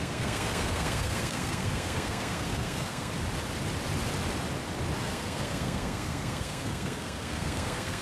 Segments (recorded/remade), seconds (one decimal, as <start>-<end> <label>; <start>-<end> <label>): 0.0-3.1 remade; 3.1-5.0 recorded; 5.0-8.0 remade